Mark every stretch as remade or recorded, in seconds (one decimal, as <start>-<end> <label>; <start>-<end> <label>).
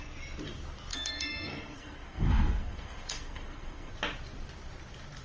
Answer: 0.0-0.9 recorded; 0.9-3.9 remade; 3.9-5.2 recorded